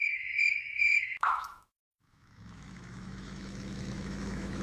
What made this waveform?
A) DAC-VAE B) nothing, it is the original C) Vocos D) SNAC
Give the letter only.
A